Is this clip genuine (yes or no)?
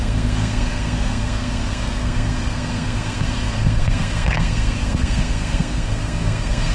no